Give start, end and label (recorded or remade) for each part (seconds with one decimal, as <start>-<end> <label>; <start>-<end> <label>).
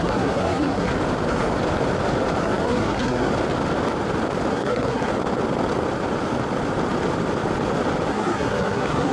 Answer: 0.0-0.9 remade; 0.9-2.4 recorded; 2.4-3.3 remade; 3.3-4.5 recorded; 4.5-5.1 remade; 5.1-8.1 recorded; 8.1-9.1 remade